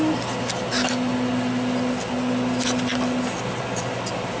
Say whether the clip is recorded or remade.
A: recorded